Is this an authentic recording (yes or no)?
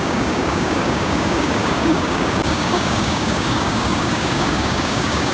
no